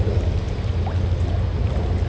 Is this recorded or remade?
recorded